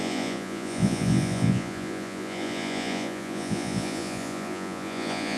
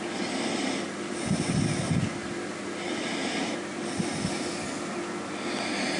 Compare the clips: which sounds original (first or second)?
second